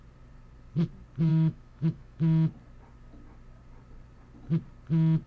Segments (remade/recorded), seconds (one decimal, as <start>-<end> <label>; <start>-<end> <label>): 0.0-1.3 recorded; 1.3-2.2 remade; 2.2-5.3 recorded